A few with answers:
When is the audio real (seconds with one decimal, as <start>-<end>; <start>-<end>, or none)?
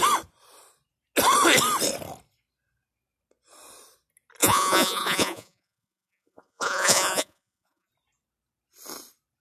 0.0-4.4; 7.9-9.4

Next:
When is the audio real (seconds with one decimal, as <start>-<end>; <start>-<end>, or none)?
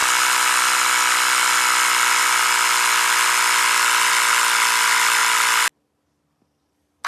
0.0-7.1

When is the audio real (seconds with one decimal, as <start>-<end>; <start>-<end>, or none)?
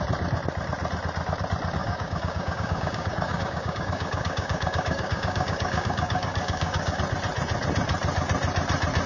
0.0-1.8; 7.0-9.1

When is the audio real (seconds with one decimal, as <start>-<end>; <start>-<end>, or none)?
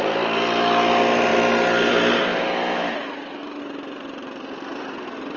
0.0-2.3; 3.6-5.4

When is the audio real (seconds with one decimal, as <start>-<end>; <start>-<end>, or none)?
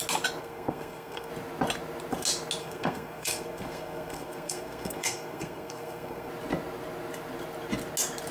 0.0-0.4; 1.3-2.6; 6.3-8.3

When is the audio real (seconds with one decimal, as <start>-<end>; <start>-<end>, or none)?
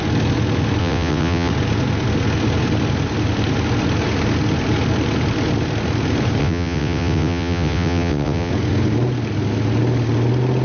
0.0-0.8; 1.5-6.4; 8.5-10.6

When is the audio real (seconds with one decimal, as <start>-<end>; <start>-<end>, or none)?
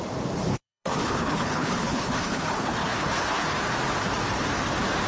0.0-0.5; 3.6-5.1